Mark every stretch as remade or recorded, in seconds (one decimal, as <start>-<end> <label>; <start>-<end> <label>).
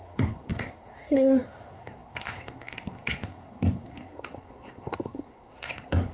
0.0-6.1 remade